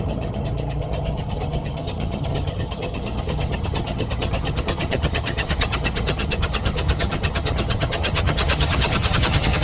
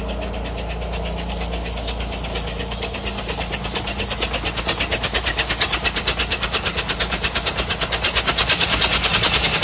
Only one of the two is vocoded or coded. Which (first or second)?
first